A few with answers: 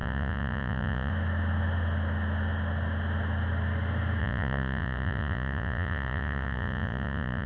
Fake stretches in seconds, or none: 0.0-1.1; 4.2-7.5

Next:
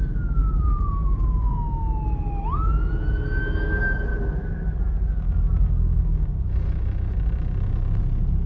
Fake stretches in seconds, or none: 0.4-1.6

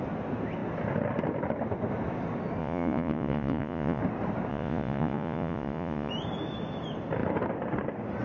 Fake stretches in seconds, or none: 2.6-4.0; 4.5-6.1

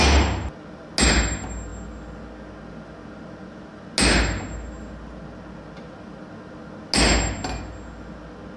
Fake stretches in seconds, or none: none

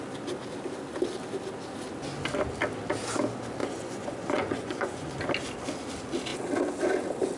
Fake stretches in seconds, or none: 3.6-5.2

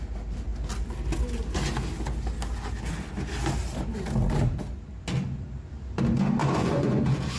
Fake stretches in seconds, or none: 6.4-7.0